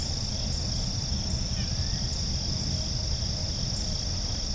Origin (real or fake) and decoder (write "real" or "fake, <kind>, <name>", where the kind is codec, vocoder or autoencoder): real